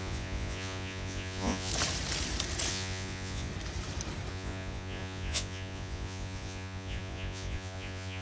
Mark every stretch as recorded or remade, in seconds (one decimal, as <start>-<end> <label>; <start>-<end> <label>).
0.0-1.7 remade; 1.7-2.7 recorded; 2.7-3.5 remade; 3.5-4.3 recorded; 4.3-8.2 remade